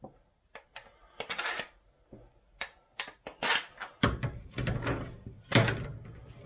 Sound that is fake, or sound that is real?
real